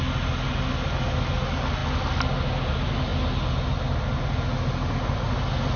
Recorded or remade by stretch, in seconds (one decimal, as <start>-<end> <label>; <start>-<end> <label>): 0.0-5.8 recorded